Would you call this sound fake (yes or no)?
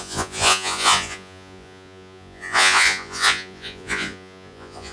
yes